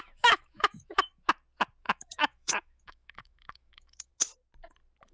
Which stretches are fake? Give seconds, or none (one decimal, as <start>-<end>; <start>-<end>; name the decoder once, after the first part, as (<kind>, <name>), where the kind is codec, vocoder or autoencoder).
0.0-1.1 (autoencoder, DAC-VAE); 1.8-4.1

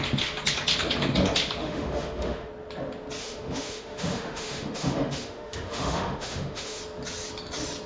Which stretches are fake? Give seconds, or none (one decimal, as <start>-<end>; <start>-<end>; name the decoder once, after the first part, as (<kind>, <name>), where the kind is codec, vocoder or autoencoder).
1.6-2.5 (autoencoder, DAC-VAE); 3.2-6.8

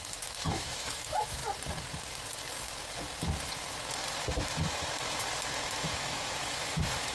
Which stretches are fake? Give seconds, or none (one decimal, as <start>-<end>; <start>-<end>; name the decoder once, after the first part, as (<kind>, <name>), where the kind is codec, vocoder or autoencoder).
0.0-1.4 (autoencoder, DAC-VAE); 5.7-7.1

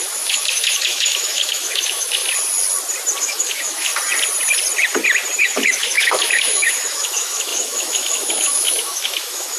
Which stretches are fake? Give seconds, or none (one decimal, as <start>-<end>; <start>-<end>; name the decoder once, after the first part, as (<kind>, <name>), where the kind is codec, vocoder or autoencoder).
0.0-2.2 (autoencoder, DAC-VAE); 3.2-3.9; 5.4-9.6

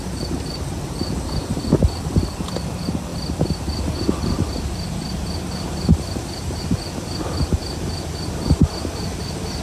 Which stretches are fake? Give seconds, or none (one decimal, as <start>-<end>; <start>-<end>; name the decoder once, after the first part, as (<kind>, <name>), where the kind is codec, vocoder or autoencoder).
none